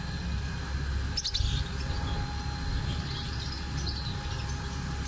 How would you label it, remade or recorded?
recorded